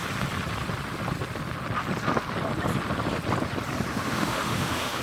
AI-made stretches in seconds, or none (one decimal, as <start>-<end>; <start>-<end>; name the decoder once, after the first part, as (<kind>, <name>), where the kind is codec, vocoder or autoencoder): 3.9-5.0 (autoencoder, DAC-VAE)